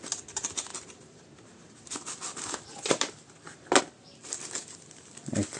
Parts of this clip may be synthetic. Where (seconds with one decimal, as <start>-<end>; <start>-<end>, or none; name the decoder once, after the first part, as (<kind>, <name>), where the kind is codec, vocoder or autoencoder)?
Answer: none